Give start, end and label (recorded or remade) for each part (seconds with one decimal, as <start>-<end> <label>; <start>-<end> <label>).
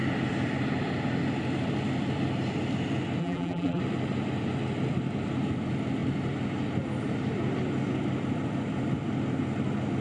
0.0-3.2 recorded; 3.2-3.8 remade; 3.8-10.0 recorded